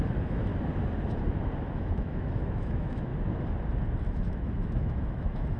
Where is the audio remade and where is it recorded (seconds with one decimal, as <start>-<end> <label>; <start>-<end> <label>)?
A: 0.0-0.5 remade; 0.5-1.7 recorded; 1.7-3.1 remade; 3.1-4.1 recorded; 4.1-5.6 remade